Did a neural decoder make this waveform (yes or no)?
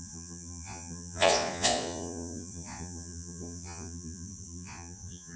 yes